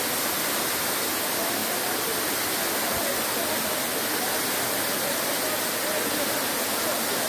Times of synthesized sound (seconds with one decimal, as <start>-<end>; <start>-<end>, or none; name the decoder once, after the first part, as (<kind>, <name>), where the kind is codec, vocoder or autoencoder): none